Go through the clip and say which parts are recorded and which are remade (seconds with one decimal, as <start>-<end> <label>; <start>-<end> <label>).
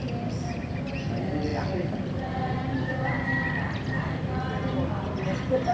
0.0-5.7 recorded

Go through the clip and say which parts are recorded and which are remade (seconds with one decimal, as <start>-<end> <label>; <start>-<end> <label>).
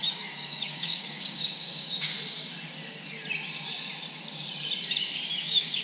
0.0-2.1 remade; 2.1-5.3 recorded; 5.3-5.8 remade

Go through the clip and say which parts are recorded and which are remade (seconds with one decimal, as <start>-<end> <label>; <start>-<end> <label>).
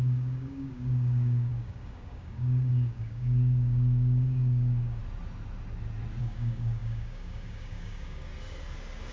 0.0-5.0 remade; 5.0-6.2 recorded; 6.2-8.3 remade; 8.3-9.1 recorded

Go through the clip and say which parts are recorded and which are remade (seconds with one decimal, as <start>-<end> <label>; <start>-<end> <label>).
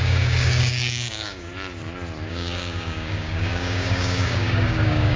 0.0-1.5 remade; 1.5-2.3 recorded; 2.3-5.2 remade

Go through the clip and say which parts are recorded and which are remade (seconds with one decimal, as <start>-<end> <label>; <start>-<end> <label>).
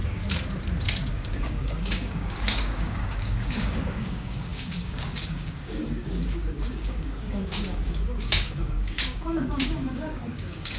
0.0-1.1 recorded; 1.1-10.8 remade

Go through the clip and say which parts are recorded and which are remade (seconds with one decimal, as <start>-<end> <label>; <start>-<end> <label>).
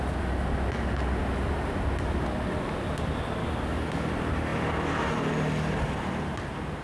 0.0-3.4 recorded; 3.4-4.1 remade; 4.1-6.8 recorded